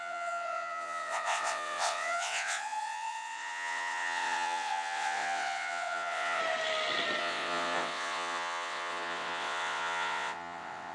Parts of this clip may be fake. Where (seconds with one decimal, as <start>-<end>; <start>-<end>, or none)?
0.0-6.4; 7.2-10.9